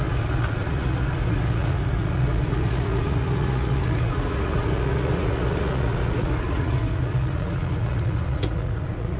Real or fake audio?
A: fake